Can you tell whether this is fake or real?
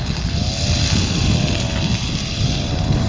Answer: real